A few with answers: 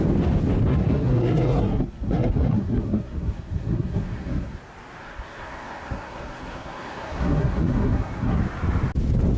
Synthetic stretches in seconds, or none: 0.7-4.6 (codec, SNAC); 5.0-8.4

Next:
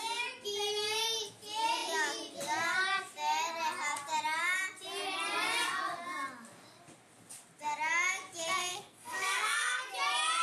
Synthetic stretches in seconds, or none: 8.7-9.9 (codec, SNAC)

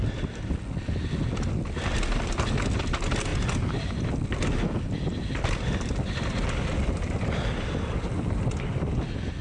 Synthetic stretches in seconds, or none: none

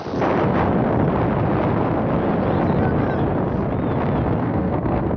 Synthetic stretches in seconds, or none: 4.4-5.2 (codec, SNAC)

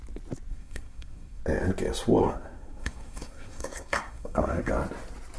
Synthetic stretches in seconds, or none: 0.5-1.4 (codec, SNAC); 2.2-4.7

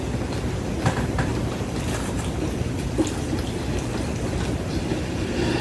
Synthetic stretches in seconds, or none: none

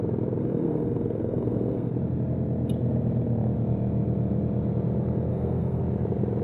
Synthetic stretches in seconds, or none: 0.4-1.9 (codec, SNAC); 5.3-5.8